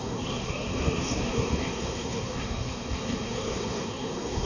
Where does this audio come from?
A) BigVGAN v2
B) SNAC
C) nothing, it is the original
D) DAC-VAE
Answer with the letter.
B